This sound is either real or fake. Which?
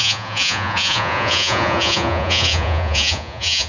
fake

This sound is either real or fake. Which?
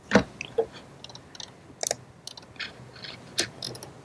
real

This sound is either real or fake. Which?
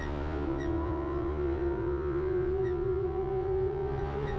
fake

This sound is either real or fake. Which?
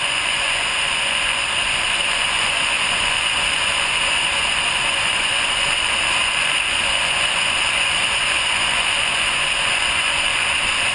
fake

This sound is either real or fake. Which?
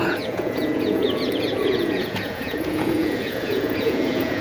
fake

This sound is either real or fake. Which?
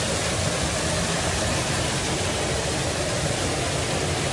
real